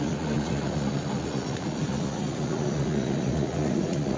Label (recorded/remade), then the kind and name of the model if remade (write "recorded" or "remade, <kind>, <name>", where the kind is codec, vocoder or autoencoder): remade, vocoder, Vocos